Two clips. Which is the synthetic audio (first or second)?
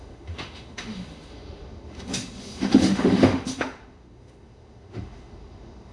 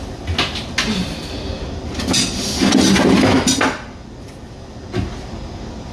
first